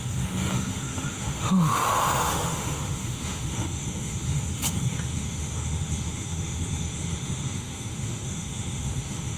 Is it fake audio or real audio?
fake